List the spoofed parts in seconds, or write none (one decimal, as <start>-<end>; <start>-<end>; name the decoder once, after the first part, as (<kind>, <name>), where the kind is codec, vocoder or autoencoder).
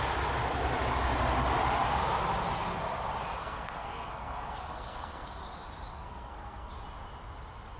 3.4-5.4 (codec, SNAC); 5.9-6.7